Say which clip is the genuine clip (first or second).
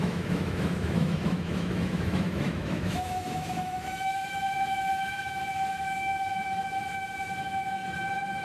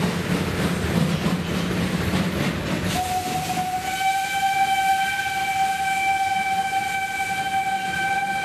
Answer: second